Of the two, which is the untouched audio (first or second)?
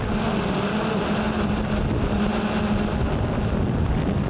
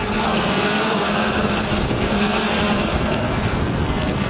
first